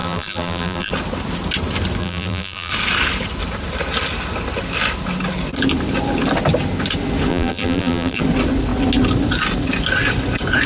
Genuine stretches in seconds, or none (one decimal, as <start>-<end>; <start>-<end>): 0.9-2.0; 2.7-7.3; 8.2-10.7

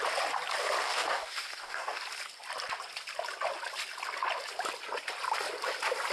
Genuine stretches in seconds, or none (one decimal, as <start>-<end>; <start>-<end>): 0.0-0.8; 2.0-6.1

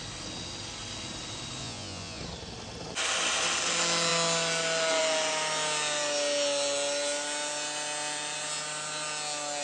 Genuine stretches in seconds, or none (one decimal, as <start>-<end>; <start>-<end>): 0.0-1.6; 2.2-9.6